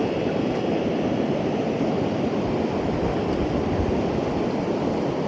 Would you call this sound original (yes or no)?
no